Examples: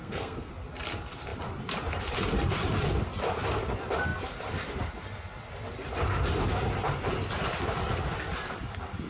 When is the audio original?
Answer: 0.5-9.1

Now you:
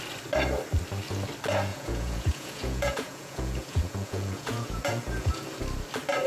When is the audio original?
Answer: 0.0-1.7; 5.5-6.3

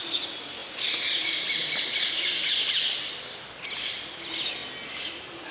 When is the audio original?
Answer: 0.0-5.5